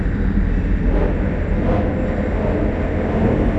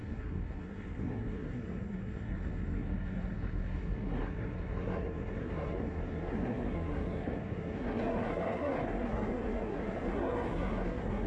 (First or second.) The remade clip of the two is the second